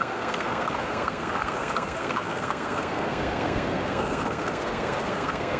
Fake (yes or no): yes